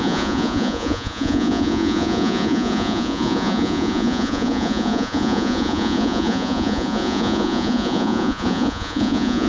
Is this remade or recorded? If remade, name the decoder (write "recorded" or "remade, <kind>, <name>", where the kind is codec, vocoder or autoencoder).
remade, vocoder, Vocos